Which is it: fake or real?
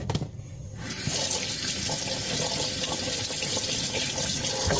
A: real